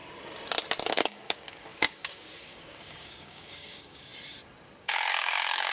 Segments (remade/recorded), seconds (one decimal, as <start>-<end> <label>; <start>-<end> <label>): 0.0-0.9 recorded; 0.9-4.1 remade; 4.1-4.8 recorded; 4.8-5.7 remade